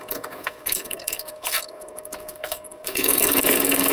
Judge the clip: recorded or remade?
remade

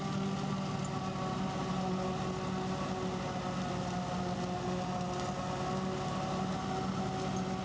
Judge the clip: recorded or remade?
recorded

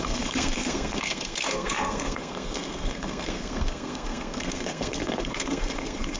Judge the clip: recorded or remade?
remade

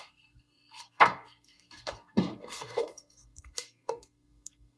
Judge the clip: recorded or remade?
remade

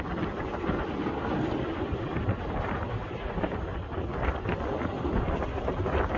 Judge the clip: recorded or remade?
recorded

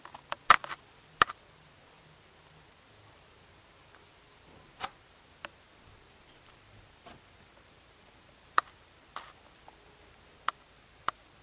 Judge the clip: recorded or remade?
recorded